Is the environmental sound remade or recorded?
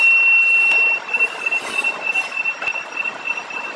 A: recorded